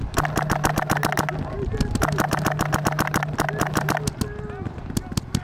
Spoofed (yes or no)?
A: no